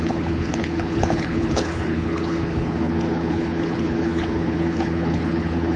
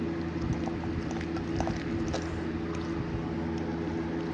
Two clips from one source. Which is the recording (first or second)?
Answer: second